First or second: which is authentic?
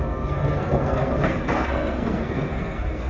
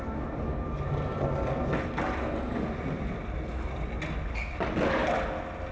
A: second